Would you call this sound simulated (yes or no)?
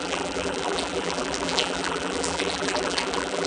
yes